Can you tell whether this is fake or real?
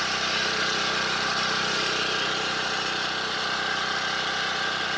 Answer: fake